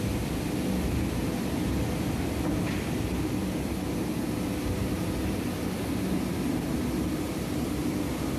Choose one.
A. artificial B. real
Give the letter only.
B